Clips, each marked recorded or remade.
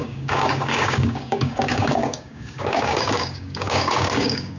remade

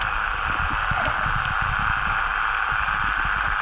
recorded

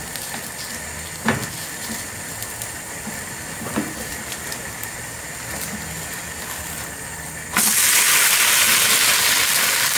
recorded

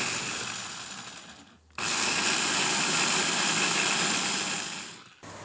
recorded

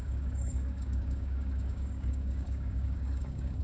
remade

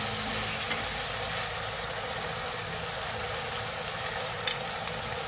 recorded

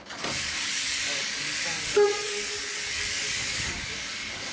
remade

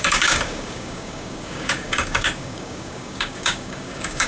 remade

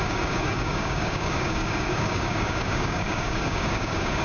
remade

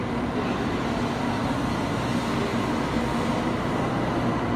recorded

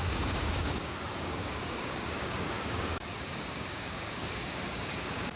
remade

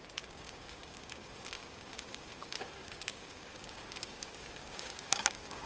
remade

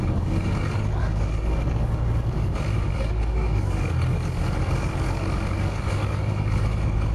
remade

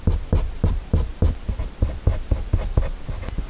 recorded